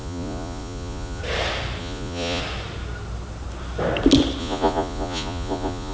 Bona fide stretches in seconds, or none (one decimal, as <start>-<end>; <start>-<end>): 1.2-1.8; 2.4-4.4